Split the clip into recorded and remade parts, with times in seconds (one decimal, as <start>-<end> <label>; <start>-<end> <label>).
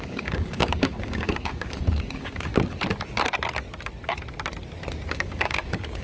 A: 0.0-2.5 remade; 2.5-5.1 recorded; 5.1-6.0 remade